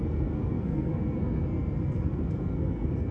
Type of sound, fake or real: fake